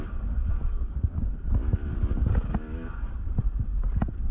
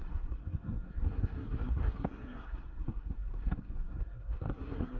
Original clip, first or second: first